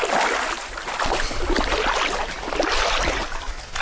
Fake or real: real